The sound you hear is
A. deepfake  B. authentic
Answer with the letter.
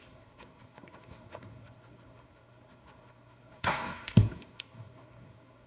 A